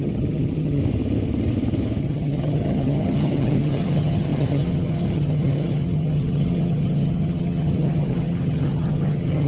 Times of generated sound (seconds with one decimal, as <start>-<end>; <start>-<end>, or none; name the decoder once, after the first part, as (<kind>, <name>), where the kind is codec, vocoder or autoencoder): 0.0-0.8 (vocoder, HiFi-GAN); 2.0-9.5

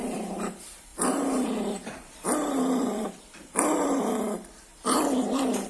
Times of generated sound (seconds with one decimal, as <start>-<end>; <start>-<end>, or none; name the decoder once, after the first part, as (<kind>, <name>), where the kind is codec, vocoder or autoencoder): 0.0-4.7 (vocoder, BigVGAN v2); 5.3-5.7

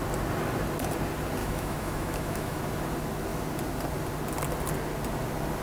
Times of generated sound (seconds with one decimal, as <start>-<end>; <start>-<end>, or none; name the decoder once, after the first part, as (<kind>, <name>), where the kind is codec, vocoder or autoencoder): 1.4-2.6 (autoencoder, DAC-VAE)

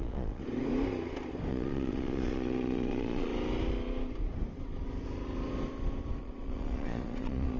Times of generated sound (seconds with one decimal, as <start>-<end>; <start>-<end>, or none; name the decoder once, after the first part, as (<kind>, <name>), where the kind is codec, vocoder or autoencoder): 0.0-0.4 (vocoder, Vocos); 1.5-3.3; 6.2-7.6

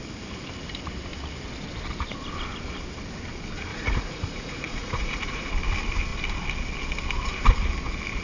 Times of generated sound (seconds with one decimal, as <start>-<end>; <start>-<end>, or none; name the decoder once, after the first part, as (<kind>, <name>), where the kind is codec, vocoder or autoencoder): 3.7-5.5 (vocoder, Vocos)

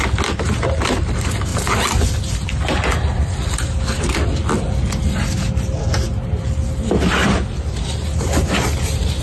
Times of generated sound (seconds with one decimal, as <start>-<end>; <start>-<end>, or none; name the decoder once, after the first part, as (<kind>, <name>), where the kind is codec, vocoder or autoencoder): 7.2-8.3 (vocoder, BigVGAN v2)

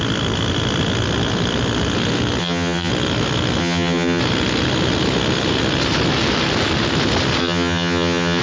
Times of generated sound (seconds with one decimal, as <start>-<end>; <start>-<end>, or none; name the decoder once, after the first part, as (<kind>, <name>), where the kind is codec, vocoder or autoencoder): 2.4-2.9 (vocoder, HiFi-GAN); 3.6-4.2; 7.4-8.4

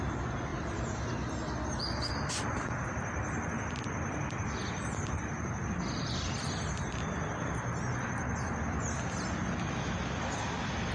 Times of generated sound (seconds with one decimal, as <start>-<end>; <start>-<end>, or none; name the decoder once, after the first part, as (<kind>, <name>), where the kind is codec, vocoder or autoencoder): none